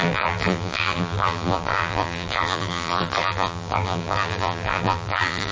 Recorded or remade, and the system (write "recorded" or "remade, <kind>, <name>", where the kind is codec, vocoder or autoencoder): remade, vocoder, BigVGAN v2